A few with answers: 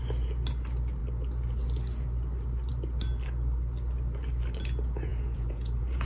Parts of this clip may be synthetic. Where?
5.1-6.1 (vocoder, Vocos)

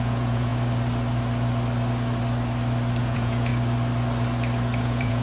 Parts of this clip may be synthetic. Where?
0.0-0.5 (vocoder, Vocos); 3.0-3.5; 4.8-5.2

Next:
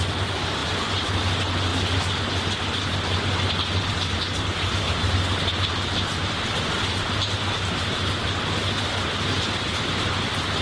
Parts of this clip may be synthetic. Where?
none